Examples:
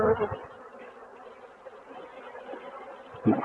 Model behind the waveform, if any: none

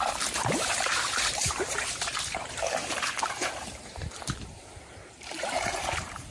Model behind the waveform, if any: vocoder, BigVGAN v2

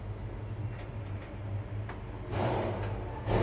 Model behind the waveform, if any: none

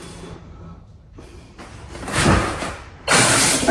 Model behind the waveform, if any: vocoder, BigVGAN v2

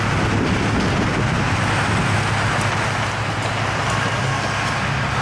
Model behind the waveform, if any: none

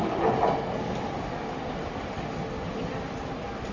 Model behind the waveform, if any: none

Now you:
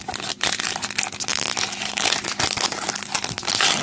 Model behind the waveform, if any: none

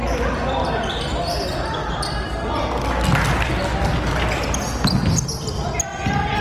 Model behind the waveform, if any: none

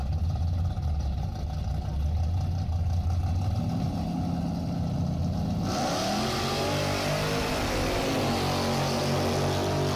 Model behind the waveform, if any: none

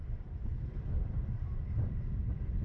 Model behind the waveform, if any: none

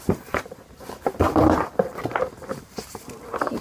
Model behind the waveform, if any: vocoder, BigVGAN v2